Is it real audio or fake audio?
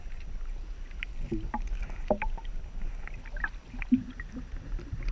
real